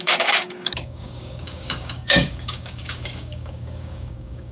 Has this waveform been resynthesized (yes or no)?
yes